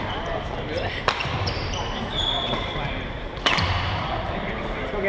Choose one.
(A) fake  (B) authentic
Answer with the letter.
A